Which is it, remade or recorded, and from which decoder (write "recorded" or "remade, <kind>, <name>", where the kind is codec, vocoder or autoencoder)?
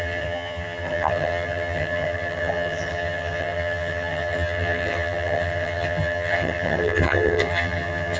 remade, vocoder, HiFi-GAN